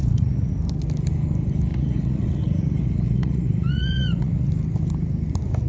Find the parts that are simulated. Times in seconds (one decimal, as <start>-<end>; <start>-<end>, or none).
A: 0.0-0.5; 1.7-4.5